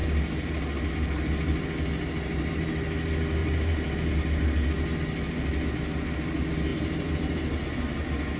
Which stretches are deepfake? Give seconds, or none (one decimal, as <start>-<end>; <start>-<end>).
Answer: 3.4-4.1; 6.7-7.6

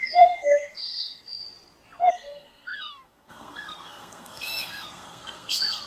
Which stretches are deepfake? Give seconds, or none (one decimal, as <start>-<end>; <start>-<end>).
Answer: 0.0-1.4; 2.1-5.9

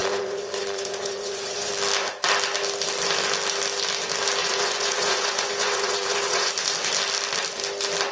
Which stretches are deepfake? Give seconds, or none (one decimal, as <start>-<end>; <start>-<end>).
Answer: 0.0-1.7; 4.4-6.5

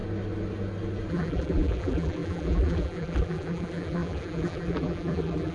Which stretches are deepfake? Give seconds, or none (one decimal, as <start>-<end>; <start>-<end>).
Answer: 1.1-5.5

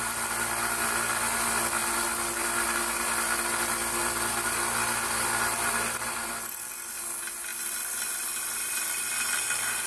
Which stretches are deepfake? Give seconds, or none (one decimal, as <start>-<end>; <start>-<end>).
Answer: 1.8-2.4; 4.0-6.3

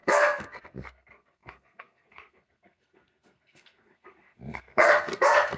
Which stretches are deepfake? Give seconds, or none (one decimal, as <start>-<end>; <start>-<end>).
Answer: 0.0-5.6

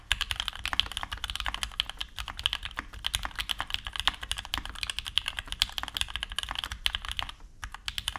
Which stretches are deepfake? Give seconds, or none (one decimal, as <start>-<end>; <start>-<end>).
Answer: none